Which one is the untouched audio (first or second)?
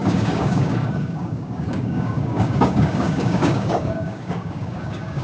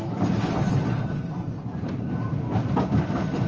second